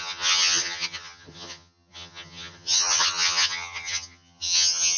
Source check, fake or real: fake